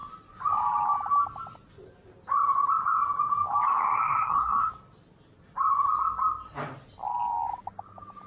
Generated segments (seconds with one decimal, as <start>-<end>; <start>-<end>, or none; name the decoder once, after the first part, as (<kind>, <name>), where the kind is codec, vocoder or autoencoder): 3.7-4.7 (codec, SNAC)